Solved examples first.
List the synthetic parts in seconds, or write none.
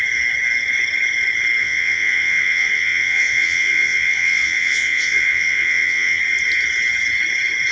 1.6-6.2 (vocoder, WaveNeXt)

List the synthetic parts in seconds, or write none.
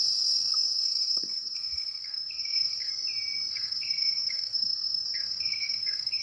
0.0-2.9 (codec, SNAC); 3.5-6.2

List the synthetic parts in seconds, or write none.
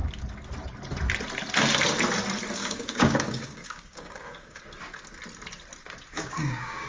2.6-4.6 (codec, DAC); 6.1-6.9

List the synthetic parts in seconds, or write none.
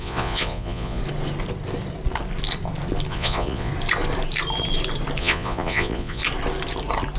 0.0-1.0 (vocoder, Vocos); 3.1-3.7; 5.2-6.2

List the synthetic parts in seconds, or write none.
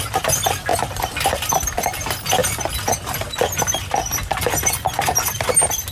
none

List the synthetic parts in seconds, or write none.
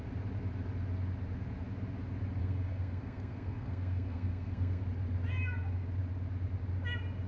2.4-4.8 (codec, SNAC)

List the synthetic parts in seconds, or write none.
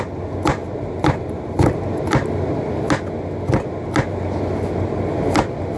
0.6-2.7 (vocoder, BigVGAN v2)